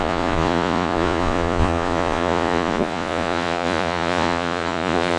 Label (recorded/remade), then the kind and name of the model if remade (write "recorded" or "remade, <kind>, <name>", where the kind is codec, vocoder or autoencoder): remade, vocoder, Vocos